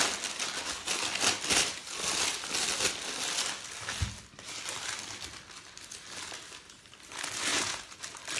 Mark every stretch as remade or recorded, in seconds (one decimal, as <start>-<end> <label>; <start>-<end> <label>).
0.0-7.5 recorded; 7.5-8.0 remade; 8.0-8.4 recorded